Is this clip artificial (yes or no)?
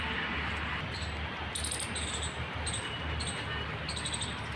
no